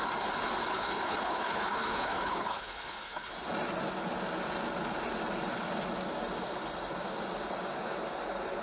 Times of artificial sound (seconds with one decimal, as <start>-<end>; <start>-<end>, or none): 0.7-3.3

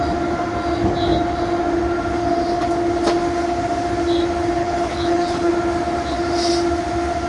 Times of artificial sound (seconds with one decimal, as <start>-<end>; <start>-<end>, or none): 4.6-5.5

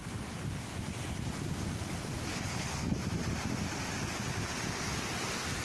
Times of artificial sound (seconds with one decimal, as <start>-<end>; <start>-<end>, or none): 2.3-3.0